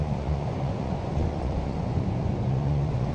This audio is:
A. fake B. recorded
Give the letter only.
A